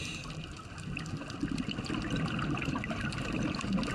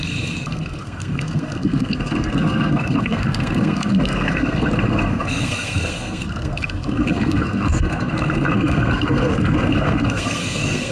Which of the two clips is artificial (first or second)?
second